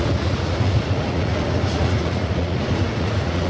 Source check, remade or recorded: remade